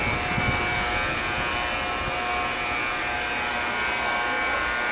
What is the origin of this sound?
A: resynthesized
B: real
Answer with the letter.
B